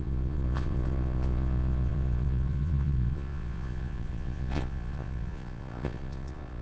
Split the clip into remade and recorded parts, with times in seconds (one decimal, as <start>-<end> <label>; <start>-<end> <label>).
0.0-6.6 remade